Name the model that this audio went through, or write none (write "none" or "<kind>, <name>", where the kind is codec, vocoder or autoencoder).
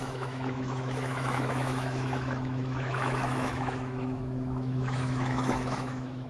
autoencoder, DAC-VAE